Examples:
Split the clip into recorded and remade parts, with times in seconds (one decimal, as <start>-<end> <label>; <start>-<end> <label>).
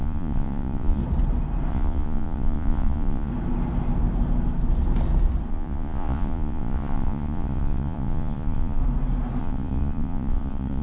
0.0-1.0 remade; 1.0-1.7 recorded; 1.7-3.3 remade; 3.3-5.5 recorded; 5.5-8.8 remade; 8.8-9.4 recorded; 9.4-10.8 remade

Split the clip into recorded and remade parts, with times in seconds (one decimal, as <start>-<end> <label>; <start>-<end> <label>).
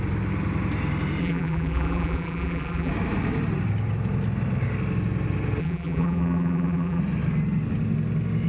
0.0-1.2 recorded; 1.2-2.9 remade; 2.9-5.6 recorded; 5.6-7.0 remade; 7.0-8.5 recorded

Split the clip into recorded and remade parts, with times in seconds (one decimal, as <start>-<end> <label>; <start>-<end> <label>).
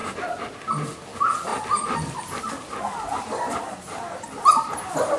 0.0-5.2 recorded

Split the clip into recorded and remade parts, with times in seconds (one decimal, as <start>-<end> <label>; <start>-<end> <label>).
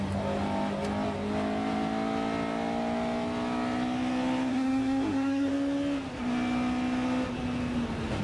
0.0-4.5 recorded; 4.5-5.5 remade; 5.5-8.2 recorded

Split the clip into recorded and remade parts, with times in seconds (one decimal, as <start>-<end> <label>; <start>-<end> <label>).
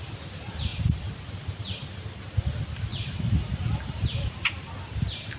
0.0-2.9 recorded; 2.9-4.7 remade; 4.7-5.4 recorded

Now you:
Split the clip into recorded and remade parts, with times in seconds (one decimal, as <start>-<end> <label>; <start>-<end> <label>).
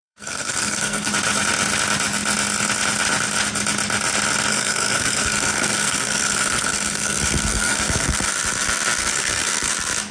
0.0-1.1 remade; 1.1-4.5 recorded; 4.5-8.3 remade; 8.3-9.0 recorded; 9.0-9.7 remade; 9.7-10.1 recorded